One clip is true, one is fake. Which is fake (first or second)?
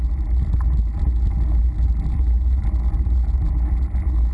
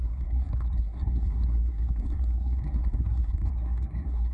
second